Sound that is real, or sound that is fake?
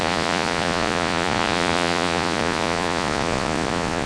fake